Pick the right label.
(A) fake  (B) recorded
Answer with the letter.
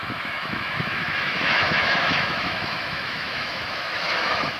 A